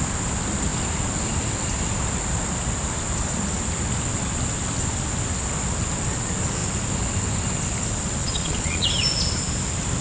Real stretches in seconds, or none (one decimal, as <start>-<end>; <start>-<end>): 0.0-8.2; 8.9-10.0